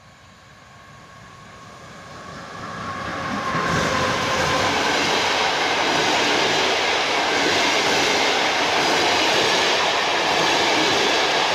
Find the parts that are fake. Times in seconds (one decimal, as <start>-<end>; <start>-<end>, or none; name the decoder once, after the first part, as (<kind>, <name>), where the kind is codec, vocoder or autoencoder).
none